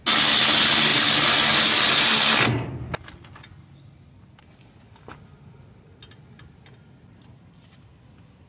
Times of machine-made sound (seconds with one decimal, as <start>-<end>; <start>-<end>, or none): none